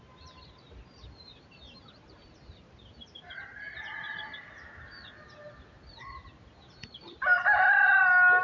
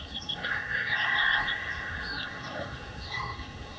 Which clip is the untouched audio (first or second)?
first